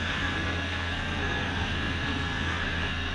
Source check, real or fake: fake